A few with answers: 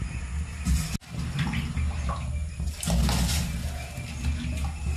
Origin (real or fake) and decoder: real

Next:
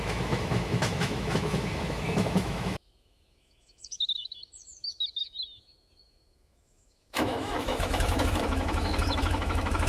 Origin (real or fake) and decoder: fake, autoencoder, DAC-VAE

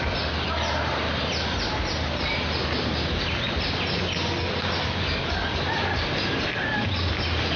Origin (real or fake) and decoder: real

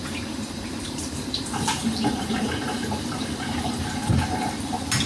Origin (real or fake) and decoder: fake, vocoder, BigVGAN v2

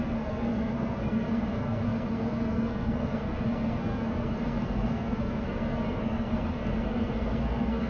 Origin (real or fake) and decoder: fake, codec, SNAC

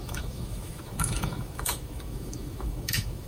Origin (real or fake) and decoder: fake, autoencoder, DAC-VAE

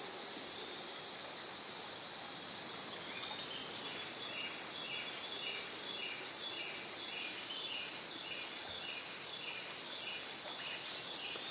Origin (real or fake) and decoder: real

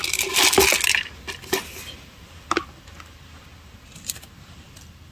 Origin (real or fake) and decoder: real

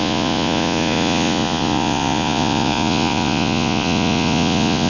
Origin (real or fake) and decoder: fake, vocoder, Vocos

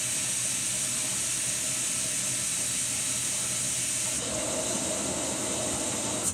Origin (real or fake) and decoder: real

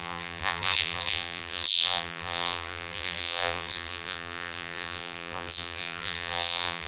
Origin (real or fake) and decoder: fake, vocoder, BigVGAN v2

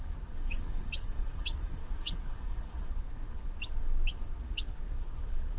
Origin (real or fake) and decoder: fake, codec, DAC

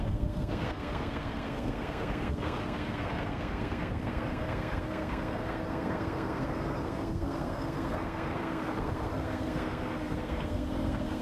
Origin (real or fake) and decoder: fake, codec, SNAC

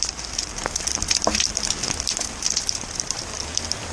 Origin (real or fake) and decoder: fake, vocoder, BigVGAN v2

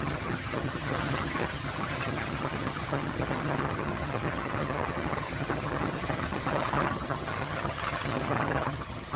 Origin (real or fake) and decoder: fake, vocoder, HiFi-GAN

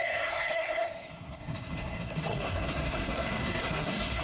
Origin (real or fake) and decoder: fake, codec, SNAC